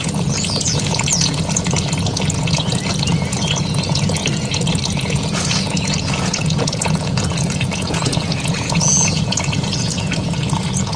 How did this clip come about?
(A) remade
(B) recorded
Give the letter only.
A